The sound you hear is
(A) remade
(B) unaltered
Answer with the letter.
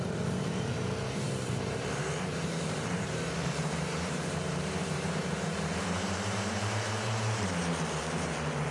A